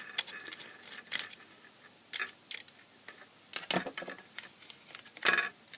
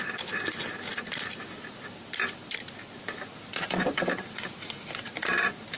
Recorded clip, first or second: first